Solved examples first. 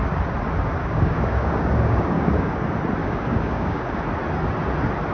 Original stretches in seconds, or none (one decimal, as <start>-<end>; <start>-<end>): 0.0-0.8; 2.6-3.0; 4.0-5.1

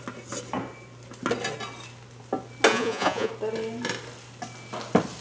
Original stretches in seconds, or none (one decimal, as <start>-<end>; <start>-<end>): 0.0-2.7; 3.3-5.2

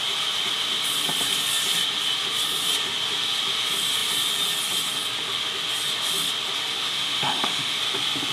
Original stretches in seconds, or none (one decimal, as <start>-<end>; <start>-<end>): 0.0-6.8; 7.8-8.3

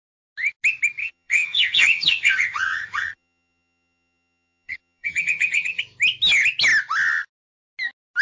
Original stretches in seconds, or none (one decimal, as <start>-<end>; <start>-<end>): 0.0-1.0; 5.8-8.2